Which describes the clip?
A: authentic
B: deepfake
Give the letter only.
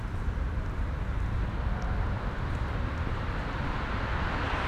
A